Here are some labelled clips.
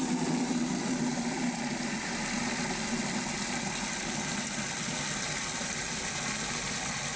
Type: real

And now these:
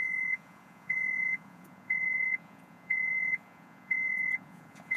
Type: fake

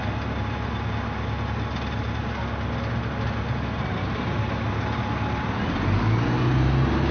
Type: real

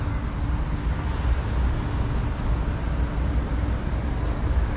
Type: real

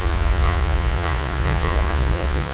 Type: fake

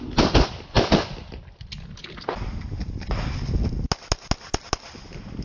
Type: real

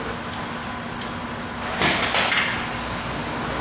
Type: real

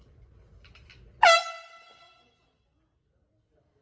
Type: real